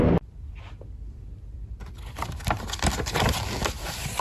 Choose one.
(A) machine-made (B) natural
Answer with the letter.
B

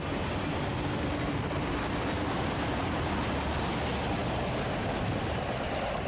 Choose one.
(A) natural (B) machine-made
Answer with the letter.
A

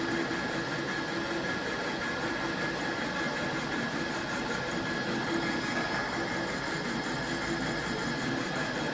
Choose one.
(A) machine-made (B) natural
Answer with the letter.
B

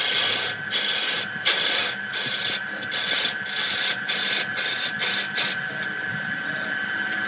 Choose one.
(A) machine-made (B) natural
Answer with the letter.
B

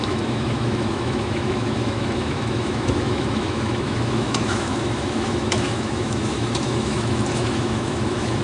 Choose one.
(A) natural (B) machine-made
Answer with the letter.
B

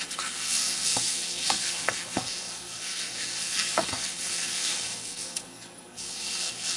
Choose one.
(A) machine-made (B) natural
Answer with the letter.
A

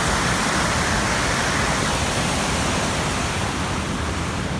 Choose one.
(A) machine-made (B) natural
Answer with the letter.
B